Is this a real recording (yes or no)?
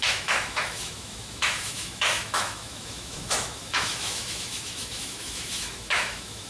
no